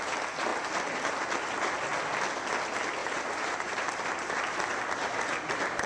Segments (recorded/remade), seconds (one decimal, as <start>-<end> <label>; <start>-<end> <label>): 0.0-3.0 recorded; 3.0-3.9 remade; 3.9-5.9 recorded